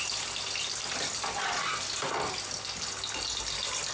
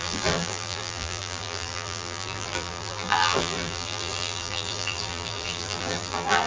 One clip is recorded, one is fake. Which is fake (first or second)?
second